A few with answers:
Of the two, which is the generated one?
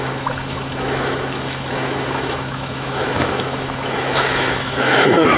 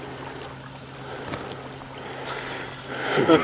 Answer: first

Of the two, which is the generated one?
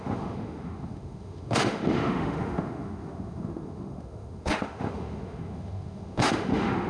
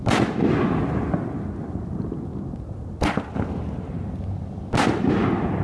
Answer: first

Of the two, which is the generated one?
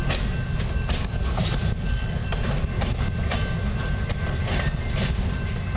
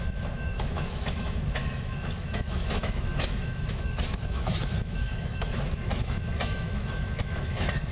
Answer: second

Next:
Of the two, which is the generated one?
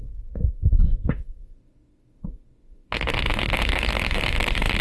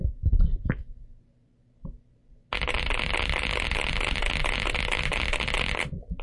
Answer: first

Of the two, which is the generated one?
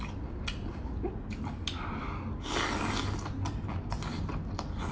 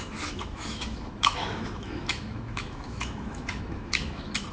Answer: second